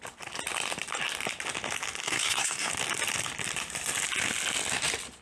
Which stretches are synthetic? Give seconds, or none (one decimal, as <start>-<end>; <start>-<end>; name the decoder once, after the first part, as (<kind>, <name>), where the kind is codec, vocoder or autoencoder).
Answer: 2.0-2.7 (codec, SNAC)